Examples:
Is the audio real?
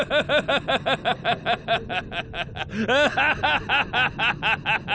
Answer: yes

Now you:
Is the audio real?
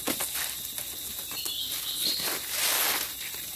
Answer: yes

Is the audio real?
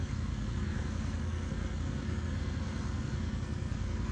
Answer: no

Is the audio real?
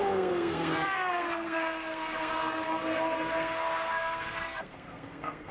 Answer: no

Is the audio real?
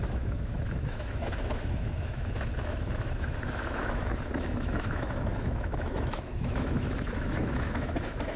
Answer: no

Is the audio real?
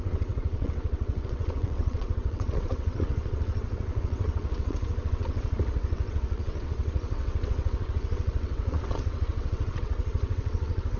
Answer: no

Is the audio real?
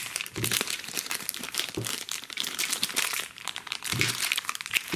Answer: no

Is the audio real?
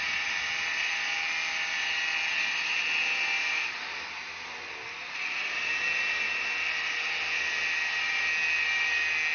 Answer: yes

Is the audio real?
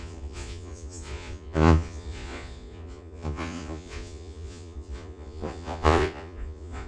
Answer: no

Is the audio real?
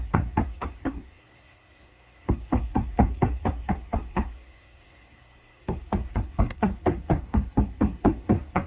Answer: no